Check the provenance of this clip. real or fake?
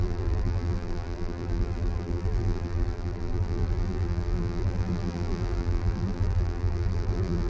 fake